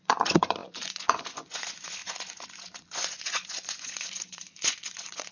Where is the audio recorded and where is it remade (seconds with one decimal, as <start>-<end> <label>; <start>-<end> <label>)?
0.0-5.3 remade